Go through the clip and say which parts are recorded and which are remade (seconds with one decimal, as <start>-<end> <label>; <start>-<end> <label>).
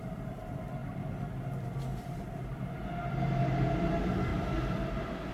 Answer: 0.0-4.3 recorded; 4.3-5.3 remade